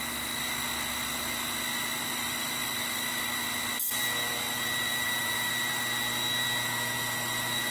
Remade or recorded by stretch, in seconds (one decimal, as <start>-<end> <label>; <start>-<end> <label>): 0.0-4.9 recorded; 4.9-5.5 remade; 5.5-7.7 recorded